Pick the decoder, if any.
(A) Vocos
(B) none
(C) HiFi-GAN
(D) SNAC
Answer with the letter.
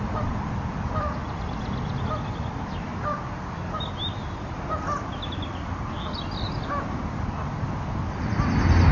B